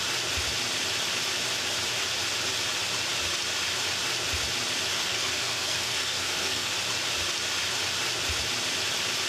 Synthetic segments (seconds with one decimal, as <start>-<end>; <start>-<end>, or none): 4.9-6.7